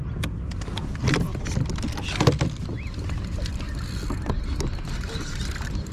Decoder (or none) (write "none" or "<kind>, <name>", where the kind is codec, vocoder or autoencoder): none